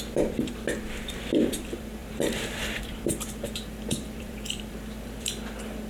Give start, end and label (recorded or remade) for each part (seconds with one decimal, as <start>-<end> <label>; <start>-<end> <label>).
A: 0.0-5.9 remade